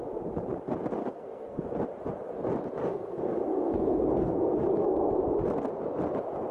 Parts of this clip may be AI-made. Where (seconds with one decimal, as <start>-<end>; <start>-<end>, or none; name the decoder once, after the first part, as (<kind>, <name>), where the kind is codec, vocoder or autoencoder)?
1.0-1.6 (codec, SNAC); 2.8-5.1